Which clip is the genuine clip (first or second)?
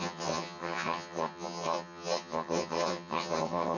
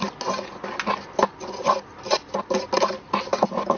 second